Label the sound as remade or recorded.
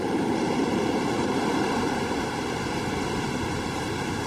remade